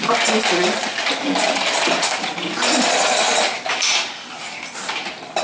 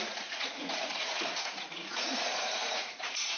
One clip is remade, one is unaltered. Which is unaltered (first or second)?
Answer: first